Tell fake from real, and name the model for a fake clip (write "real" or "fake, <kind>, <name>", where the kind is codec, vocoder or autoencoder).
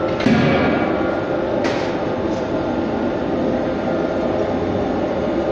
real